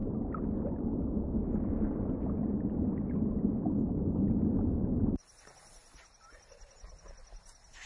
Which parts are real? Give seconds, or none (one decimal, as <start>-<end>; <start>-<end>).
0.0-7.9